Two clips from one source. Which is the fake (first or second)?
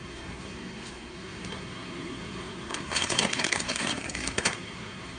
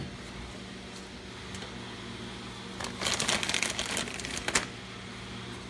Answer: first